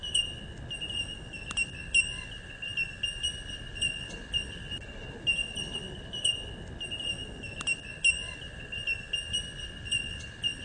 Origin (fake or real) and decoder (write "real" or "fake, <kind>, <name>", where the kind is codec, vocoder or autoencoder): real